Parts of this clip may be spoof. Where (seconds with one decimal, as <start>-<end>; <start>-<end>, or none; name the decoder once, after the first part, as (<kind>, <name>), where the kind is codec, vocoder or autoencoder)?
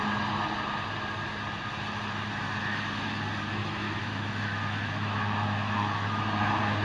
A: 2.7-3.2 (autoencoder, DAC-VAE); 3.6-6.2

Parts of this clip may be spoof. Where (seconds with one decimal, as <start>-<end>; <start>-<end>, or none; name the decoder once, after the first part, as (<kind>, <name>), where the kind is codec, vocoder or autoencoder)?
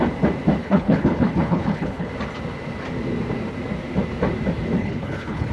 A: 0.6-2.1 (codec, HILCodec); 4.8-5.5